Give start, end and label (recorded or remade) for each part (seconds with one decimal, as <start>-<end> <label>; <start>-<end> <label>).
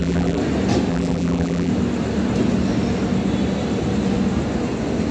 0.0-0.4 remade; 0.4-0.9 recorded; 0.9-1.7 remade; 1.7-5.1 recorded